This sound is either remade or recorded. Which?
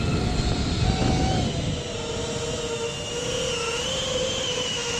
recorded